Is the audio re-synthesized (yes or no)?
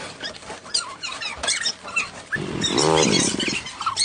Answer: yes